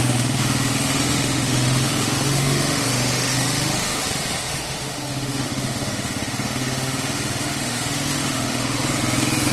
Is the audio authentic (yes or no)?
no